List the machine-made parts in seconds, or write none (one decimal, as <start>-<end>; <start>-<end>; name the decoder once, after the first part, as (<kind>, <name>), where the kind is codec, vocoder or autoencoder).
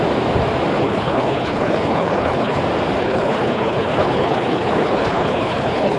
0.7-2.6 (codec, HILCodec); 3.0-6.0